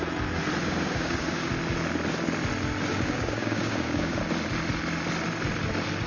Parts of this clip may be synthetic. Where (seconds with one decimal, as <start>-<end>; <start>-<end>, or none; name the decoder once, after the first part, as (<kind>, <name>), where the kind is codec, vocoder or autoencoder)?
0.6-1.5 (codec, DAC); 2.9-4.2